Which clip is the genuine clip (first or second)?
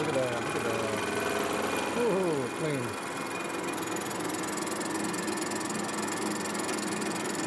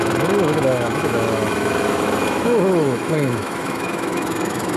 first